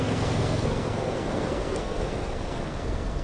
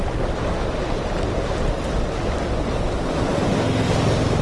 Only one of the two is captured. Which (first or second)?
second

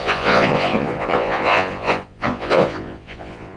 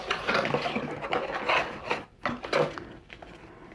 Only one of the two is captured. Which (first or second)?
second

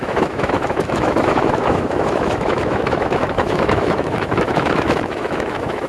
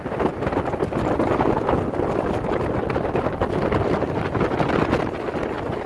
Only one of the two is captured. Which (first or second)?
second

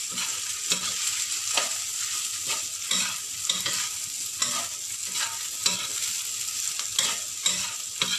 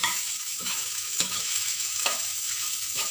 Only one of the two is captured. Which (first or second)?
first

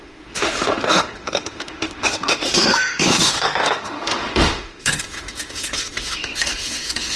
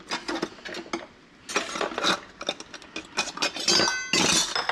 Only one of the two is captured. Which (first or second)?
second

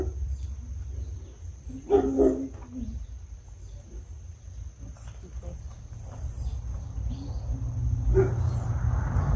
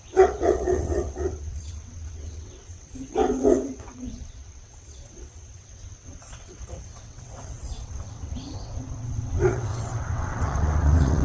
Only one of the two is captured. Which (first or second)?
first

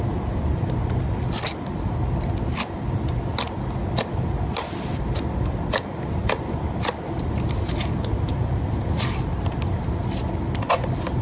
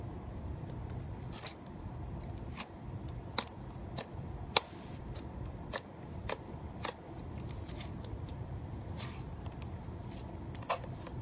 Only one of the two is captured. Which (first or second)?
first